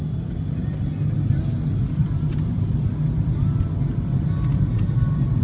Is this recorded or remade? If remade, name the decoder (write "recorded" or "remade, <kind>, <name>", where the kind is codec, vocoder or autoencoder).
recorded